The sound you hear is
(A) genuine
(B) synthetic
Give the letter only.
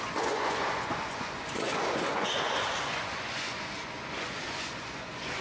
B